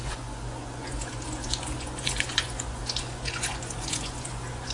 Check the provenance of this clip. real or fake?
fake